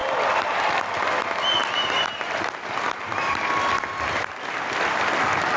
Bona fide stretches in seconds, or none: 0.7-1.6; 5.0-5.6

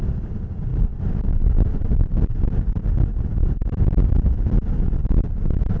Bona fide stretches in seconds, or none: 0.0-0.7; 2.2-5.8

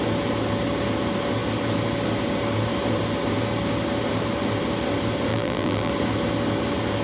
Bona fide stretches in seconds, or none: 0.0-5.3; 5.9-7.0

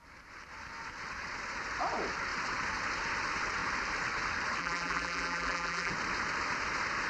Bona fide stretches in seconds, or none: 0.0-4.6; 5.9-7.1